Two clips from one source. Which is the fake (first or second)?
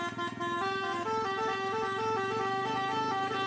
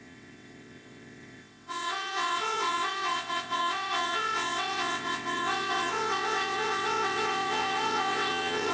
second